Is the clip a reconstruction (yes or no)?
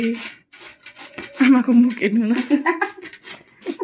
yes